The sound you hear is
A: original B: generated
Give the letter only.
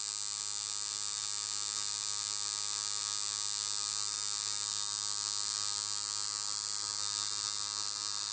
A